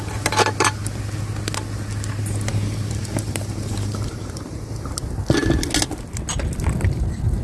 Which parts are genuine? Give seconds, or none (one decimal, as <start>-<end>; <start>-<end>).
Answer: 0.0-2.5; 4.9-7.4